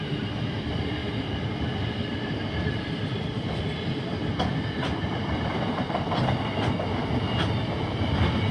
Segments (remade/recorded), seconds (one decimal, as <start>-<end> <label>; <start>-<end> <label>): 0.0-1.0 recorded; 1.0-1.6 remade; 1.6-2.1 recorded; 2.1-5.0 remade; 5.0-8.5 recorded